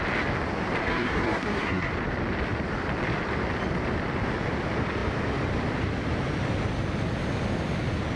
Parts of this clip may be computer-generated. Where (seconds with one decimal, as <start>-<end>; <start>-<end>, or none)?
0.8-1.9